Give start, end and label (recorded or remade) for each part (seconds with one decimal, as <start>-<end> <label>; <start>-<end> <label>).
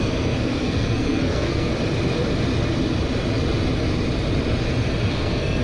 0.0-1.7 remade; 1.7-5.1 recorded; 5.1-5.6 remade